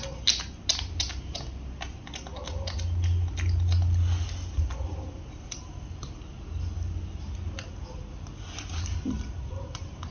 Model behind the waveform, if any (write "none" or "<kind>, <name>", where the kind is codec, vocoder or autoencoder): none